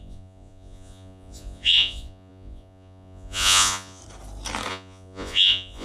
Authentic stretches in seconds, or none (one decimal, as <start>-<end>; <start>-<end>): 4.0-4.7